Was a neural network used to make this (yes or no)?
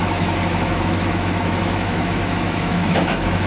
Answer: yes